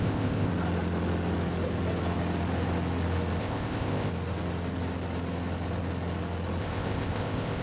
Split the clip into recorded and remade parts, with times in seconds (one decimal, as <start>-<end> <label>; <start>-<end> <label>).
0.0-0.5 remade; 0.5-3.4 recorded; 3.4-4.1 remade; 4.1-6.6 recorded; 6.6-7.6 remade